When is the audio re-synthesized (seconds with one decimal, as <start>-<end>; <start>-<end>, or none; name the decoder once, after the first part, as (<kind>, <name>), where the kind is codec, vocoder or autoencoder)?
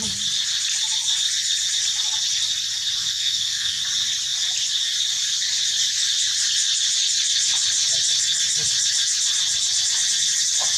3.0-3.8 (codec, SNAC)